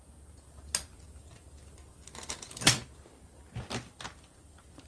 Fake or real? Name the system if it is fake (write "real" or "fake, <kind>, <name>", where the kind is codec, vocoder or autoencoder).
real